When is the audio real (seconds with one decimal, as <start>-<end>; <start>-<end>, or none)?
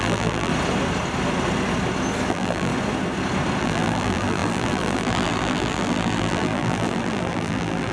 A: 0.5-2.3; 2.7-3.6